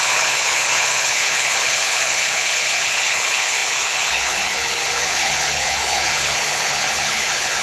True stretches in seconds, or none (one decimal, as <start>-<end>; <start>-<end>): none